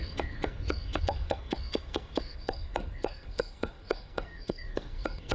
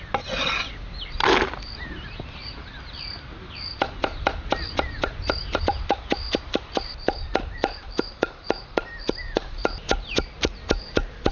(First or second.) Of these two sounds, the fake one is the first